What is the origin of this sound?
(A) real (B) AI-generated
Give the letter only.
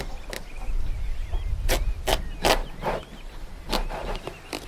A